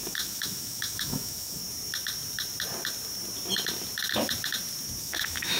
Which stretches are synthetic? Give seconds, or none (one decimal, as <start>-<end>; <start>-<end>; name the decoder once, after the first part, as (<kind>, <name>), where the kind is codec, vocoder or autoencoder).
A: 0.0-1.6 (autoencoder, DAC-VAE); 5.0-5.6